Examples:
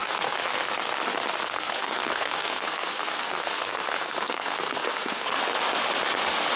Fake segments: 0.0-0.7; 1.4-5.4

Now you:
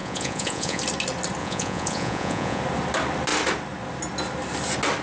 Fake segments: 0.0-0.8; 1.4-2.6

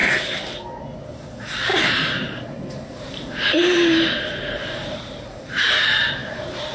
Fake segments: 1.7-5.7; 6.2-6.7

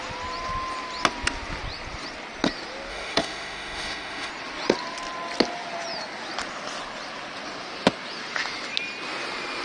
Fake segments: 2.9-4.3